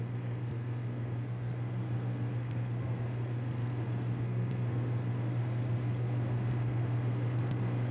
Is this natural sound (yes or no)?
no